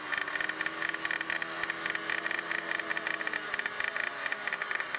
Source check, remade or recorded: recorded